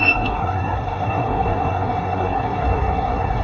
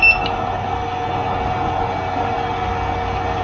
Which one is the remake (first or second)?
first